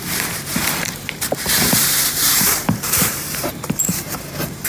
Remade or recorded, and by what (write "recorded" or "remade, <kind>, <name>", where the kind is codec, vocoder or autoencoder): remade, vocoder, BigVGAN v2